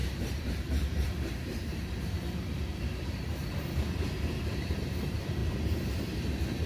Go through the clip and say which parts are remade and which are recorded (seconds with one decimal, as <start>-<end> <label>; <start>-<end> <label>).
0.0-5.4 remade; 5.4-6.7 recorded